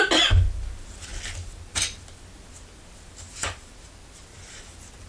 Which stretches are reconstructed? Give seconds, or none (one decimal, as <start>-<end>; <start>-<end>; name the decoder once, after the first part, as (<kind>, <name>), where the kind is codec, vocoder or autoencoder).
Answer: none